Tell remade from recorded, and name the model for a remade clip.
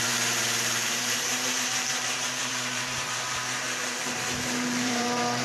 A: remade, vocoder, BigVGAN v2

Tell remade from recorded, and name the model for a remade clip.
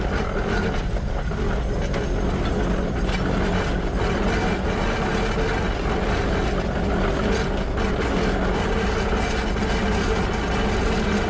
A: recorded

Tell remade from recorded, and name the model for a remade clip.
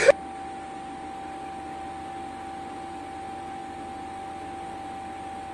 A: recorded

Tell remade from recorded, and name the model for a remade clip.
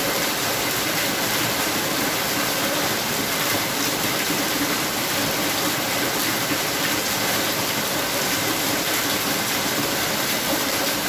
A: remade, vocoder, BigVGAN v2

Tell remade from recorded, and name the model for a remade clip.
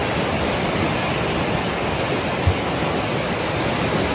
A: recorded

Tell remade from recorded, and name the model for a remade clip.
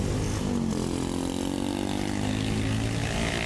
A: recorded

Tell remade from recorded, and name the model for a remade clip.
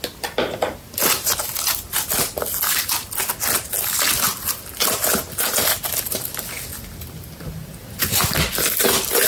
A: recorded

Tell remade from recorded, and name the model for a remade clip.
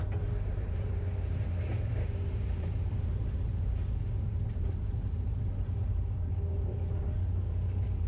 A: remade, vocoder, BigVGAN v2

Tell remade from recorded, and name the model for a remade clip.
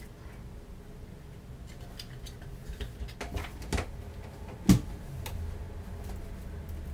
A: recorded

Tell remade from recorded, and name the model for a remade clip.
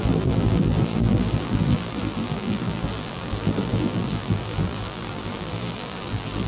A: remade, vocoder, BigVGAN v2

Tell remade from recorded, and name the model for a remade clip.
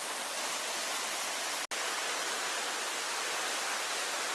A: recorded